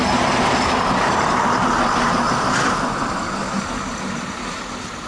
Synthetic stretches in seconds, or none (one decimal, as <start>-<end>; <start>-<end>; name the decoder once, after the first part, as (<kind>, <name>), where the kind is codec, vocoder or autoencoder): none